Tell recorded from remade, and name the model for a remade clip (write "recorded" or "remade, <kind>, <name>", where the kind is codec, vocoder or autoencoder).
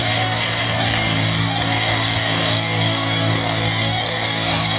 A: remade, codec, DAC